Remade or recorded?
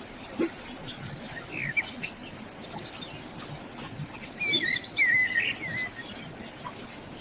recorded